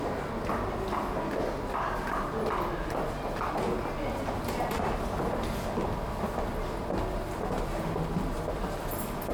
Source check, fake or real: real